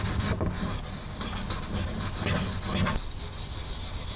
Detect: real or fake real